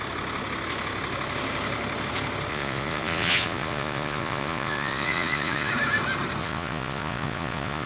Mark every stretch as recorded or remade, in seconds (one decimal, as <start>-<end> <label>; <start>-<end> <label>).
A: 0.0-2.5 recorded; 2.5-5.7 remade; 5.7-6.4 recorded; 6.4-7.9 remade